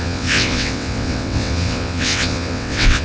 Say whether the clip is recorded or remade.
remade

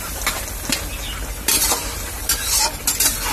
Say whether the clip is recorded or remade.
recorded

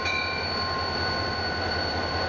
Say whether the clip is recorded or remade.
recorded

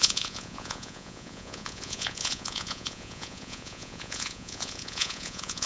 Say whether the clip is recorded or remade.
remade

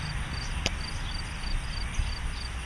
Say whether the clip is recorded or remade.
recorded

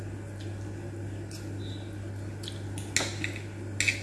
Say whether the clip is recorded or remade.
recorded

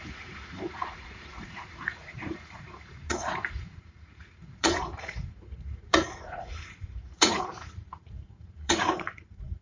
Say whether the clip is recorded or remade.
remade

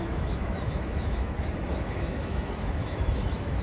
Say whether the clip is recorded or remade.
remade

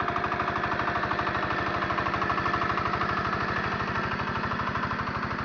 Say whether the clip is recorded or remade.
recorded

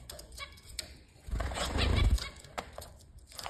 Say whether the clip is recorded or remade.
remade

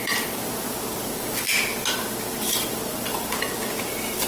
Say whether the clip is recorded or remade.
recorded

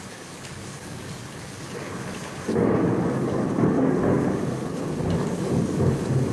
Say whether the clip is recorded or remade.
remade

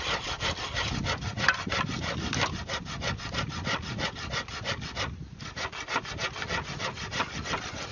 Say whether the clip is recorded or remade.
recorded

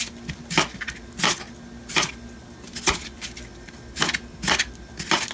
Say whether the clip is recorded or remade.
recorded